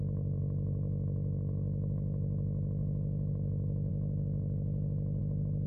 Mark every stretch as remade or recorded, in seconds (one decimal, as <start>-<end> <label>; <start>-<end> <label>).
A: 0.0-5.7 recorded